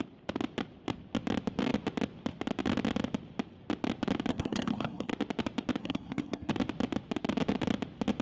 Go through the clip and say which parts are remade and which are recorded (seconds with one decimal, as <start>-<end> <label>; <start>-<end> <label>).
0.0-4.3 recorded; 4.3-5.1 remade; 5.1-5.8 recorded; 5.8-6.5 remade; 6.5-8.2 recorded